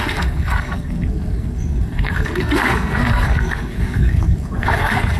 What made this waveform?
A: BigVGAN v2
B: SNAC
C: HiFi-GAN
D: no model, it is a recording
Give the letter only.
B